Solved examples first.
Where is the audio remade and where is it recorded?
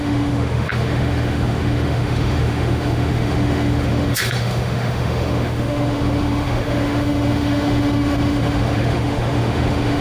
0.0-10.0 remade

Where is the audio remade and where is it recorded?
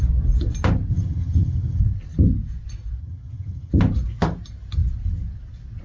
0.0-0.9 recorded; 0.9-1.8 remade; 1.8-3.0 recorded; 3.0-3.7 remade; 3.7-5.8 recorded